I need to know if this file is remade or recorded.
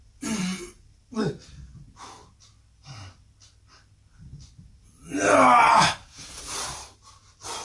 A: recorded